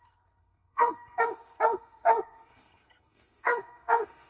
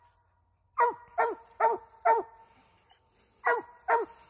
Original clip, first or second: second